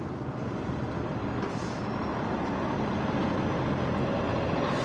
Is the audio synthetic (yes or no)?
no